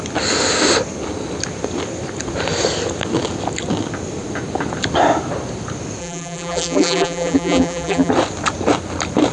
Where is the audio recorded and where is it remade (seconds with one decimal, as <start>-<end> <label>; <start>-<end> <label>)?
0.0-6.0 recorded; 6.0-8.1 remade; 8.1-9.3 recorded